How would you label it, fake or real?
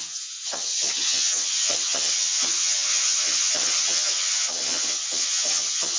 fake